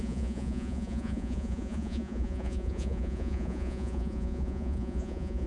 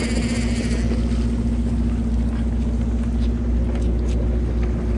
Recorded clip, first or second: second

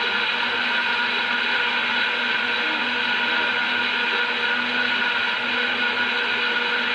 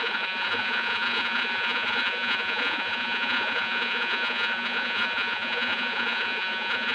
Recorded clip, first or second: first